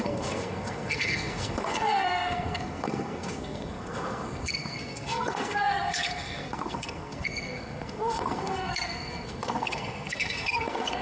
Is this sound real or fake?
fake